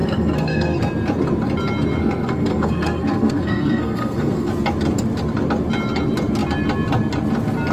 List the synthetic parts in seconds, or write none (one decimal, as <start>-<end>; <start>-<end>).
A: 0.0-0.8; 2.0-4.5